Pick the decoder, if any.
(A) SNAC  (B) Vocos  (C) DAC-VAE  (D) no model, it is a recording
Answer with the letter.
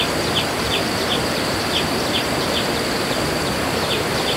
D